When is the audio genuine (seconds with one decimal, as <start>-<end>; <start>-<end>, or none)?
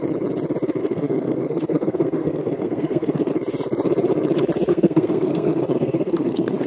0.0-0.8; 3.3-4.7